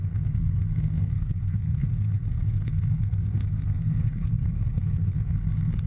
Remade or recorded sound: remade